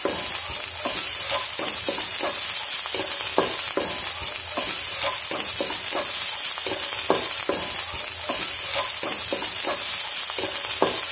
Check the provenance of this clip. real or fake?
real